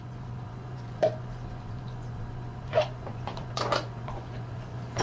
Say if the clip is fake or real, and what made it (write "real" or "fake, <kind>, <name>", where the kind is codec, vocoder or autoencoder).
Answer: fake, vocoder, Vocos